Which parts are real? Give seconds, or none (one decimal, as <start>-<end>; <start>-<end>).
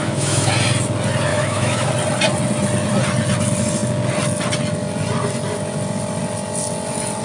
0.5-1.3; 1.9-7.2